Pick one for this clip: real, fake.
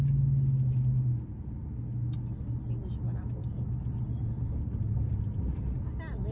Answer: real